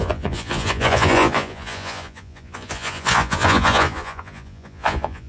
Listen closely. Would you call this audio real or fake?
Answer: fake